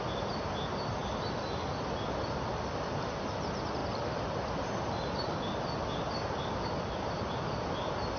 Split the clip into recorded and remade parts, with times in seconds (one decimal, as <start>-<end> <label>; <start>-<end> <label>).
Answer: 0.0-8.2 recorded